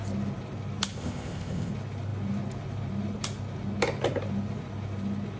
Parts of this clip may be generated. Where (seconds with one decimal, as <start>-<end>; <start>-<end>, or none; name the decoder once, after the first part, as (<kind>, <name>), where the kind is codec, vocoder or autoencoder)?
0.9-1.7 (codec, ZipCodec)